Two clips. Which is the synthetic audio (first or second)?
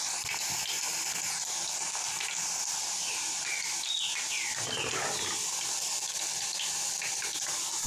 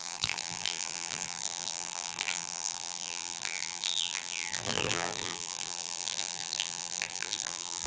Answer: second